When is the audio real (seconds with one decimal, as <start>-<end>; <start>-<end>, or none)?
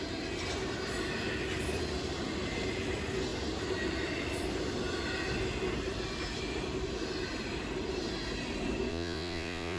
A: 0.0-8.9